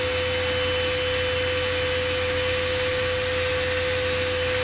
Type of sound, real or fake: real